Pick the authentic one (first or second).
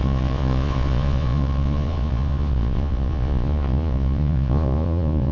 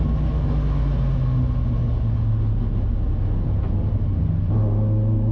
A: second